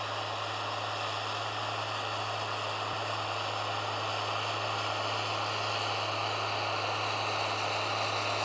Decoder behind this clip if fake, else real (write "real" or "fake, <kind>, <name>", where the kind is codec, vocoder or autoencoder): real